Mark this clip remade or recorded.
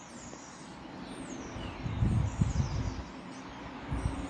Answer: recorded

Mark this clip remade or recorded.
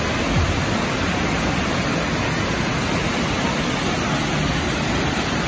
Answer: recorded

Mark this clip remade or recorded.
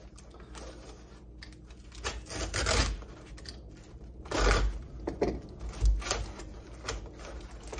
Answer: recorded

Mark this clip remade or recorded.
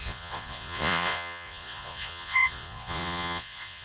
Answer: remade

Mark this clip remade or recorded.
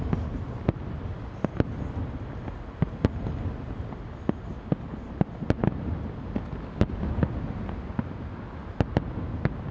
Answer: recorded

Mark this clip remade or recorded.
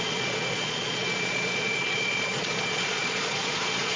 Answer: remade